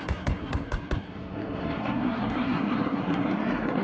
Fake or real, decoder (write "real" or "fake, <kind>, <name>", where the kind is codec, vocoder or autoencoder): fake, codec, SNAC